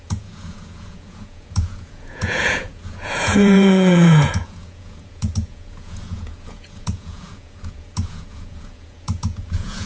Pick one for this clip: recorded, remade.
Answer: remade